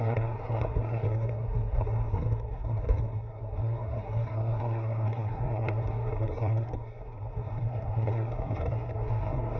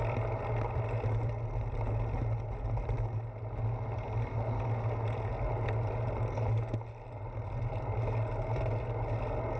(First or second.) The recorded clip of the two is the second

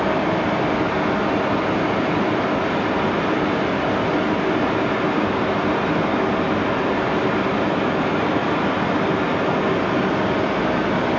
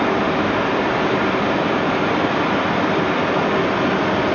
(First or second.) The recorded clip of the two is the first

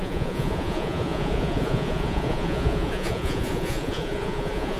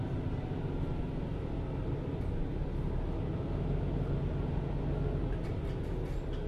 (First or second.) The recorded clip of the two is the second